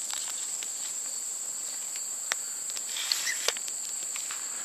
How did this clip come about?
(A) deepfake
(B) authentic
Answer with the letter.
A